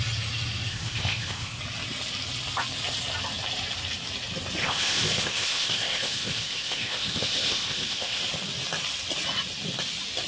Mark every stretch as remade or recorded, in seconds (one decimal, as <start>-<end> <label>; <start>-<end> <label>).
0.0-0.7 recorded; 0.7-1.6 remade; 1.6-4.6 recorded; 4.6-8.2 remade; 8.2-10.3 recorded